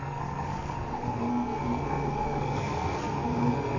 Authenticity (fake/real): fake